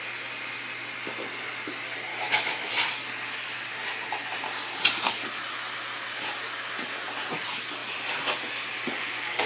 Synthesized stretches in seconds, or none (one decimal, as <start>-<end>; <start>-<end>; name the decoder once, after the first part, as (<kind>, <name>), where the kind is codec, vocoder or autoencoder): 2.1-2.7 (autoencoder, DAC-VAE)